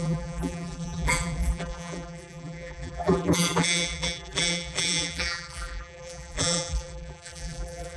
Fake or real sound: fake